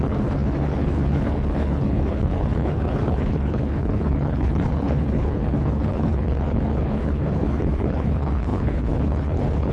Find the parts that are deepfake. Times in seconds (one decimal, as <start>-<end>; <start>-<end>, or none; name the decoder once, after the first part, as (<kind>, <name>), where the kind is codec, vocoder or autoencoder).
0.0-9.7 (codec, HILCodec)